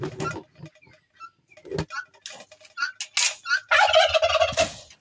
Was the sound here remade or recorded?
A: recorded